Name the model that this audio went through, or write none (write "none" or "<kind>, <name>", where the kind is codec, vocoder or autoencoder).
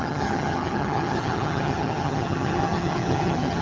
vocoder, HiFi-GAN